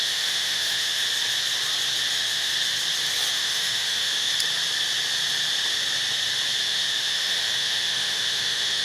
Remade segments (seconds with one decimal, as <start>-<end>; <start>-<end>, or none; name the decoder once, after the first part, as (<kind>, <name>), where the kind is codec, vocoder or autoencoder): 0.0-1.0 (autoencoder, DAC-VAE); 2.1-2.5; 3.3-4.3; 6.6-8.8